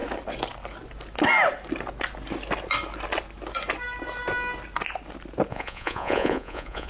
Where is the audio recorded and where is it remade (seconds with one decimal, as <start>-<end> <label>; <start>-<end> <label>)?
0.0-5.5 recorded; 5.5-6.9 remade